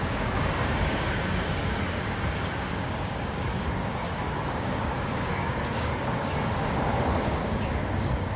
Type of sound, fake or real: fake